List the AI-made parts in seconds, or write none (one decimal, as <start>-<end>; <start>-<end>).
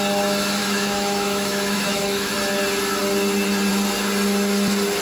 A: 0.6-2.3